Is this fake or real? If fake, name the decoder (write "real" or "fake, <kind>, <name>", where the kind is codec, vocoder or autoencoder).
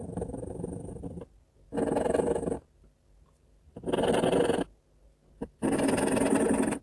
real